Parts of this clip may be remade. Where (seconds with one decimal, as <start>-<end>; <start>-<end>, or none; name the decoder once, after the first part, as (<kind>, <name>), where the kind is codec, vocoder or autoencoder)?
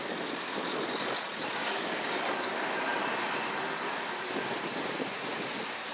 1.6-2.2 (codec, DAC)